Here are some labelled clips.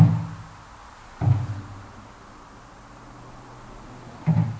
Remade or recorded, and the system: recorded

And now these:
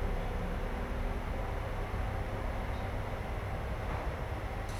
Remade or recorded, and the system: recorded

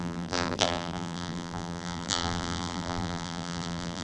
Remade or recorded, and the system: remade, vocoder, BigVGAN v2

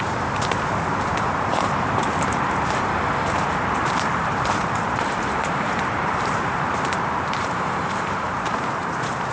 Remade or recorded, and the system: remade, vocoder, BigVGAN v2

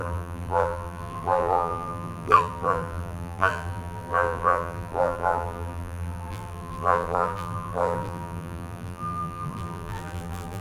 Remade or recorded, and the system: remade, vocoder, BigVGAN v2